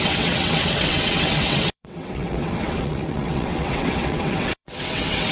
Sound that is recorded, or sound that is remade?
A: remade